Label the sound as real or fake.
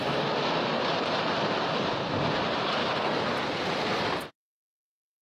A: real